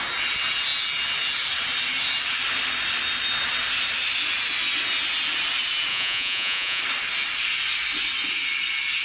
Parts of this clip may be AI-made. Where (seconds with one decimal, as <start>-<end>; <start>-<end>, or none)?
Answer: 5.9-6.8